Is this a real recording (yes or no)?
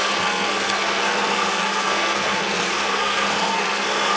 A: no